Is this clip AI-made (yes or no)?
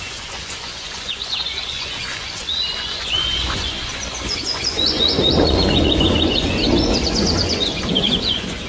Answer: yes